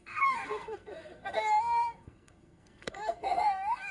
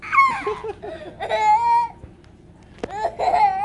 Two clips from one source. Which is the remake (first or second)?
first